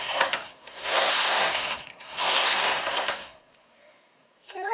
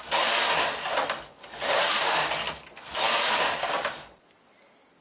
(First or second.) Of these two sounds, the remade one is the first